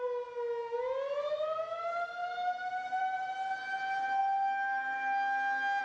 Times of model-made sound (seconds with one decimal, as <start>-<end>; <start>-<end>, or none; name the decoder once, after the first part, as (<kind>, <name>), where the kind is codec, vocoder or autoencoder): 2.2-3.0 (vocoder, BigVGAN v2)

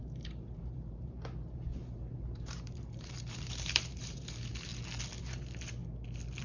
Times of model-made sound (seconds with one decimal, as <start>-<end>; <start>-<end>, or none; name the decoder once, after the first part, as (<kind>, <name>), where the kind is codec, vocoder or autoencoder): 0.0-4.7 (vocoder, BigVGAN v2); 5.2-5.8

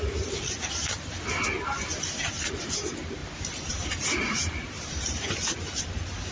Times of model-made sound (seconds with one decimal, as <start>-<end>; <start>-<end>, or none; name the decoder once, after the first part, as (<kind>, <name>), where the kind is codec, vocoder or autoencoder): 3.2-5.8 (vocoder, BigVGAN v2)

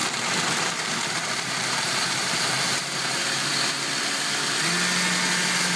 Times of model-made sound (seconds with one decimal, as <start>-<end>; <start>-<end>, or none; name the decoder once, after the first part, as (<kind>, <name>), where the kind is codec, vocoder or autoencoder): 0.0-3.5 (vocoder, BigVGAN v2)

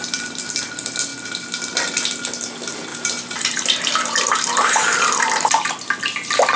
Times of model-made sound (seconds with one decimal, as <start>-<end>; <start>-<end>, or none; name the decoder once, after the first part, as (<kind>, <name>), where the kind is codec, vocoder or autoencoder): 2.9-5.7 (vocoder, BigVGAN v2)